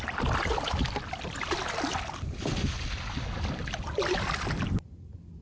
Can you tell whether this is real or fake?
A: real